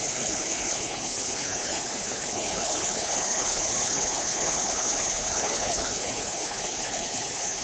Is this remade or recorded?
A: remade